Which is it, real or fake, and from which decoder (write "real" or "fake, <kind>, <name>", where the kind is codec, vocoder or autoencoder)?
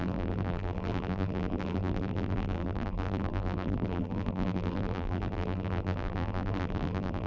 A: fake, vocoder, BigVGAN v2